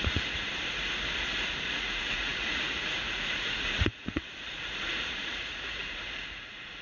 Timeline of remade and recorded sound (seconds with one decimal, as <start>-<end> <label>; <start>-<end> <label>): 0.0-0.5 remade; 0.5-1.7 recorded; 1.7-6.8 remade